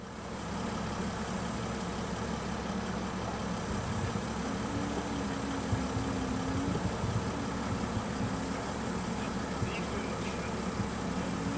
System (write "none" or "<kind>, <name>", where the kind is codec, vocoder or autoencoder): none